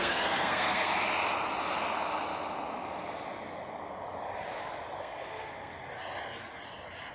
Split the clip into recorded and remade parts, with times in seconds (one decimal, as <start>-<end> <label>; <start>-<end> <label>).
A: 0.0-0.9 remade; 0.9-5.0 recorded; 5.0-5.7 remade; 5.7-7.1 recorded